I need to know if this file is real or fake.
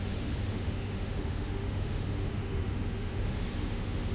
fake